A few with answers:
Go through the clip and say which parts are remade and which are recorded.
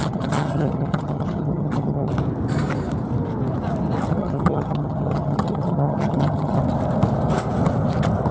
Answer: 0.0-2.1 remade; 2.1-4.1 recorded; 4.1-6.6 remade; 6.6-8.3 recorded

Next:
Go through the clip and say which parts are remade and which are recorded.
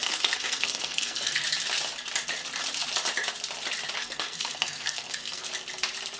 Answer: 0.0-1.4 remade; 1.4-4.0 recorded; 4.0-5.5 remade; 5.5-6.2 recorded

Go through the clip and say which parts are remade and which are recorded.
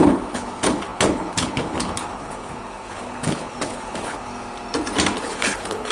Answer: 0.0-4.3 remade; 4.3-5.2 recorded; 5.2-5.9 remade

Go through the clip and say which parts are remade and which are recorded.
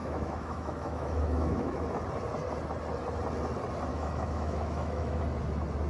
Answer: 0.0-1.8 remade; 1.8-3.9 recorded; 3.9-5.2 remade; 5.2-5.9 recorded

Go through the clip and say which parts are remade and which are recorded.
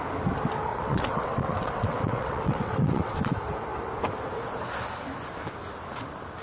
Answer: 0.0-0.7 recorded; 0.7-3.3 remade; 3.3-6.4 recorded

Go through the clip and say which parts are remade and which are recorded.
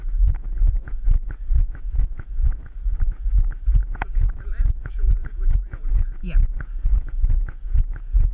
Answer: 0.0-8.3 remade